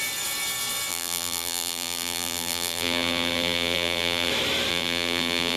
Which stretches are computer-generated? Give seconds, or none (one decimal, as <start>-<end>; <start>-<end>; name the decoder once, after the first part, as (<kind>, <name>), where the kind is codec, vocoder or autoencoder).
0.9-4.3 (vocoder, BigVGAN v2); 4.7-5.6